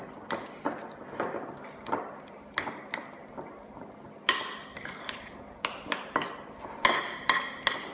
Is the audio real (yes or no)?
yes